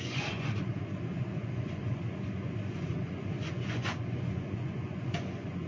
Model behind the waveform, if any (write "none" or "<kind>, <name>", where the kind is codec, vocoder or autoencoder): vocoder, Vocos